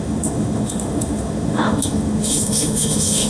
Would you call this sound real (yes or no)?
no